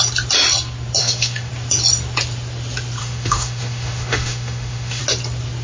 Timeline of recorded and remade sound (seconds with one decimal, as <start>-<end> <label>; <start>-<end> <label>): 0.0-1.0 recorded; 1.0-1.5 remade; 1.5-3.0 recorded; 3.0-5.0 remade; 5.0-5.6 recorded